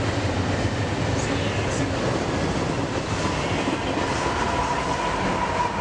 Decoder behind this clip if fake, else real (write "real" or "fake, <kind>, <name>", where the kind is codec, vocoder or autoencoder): real